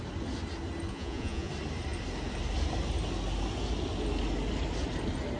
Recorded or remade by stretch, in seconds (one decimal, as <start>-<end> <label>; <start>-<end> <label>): 0.0-0.9 recorded; 0.9-1.5 remade; 1.5-5.4 recorded